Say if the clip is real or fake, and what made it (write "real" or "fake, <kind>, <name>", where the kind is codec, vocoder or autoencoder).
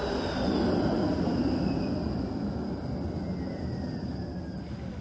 real